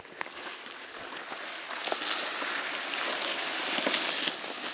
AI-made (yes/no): no